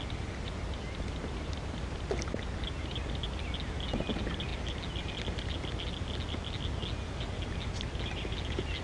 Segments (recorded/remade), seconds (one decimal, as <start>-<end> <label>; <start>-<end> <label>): 0.0-8.8 recorded